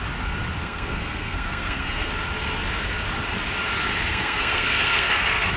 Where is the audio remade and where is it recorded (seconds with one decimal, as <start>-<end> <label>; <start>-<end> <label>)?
0.0-0.6 recorded; 0.6-2.1 remade; 2.1-4.1 recorded; 4.1-5.6 remade